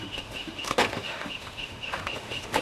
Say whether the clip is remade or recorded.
remade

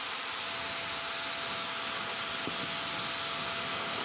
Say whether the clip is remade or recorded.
recorded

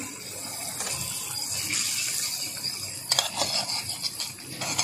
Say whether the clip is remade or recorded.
recorded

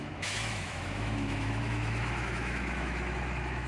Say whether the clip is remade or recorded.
remade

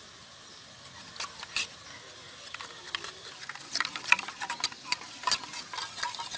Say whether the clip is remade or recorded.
recorded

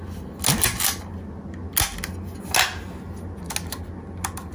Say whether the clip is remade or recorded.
recorded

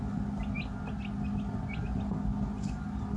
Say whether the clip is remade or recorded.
recorded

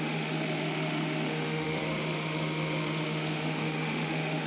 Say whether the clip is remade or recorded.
remade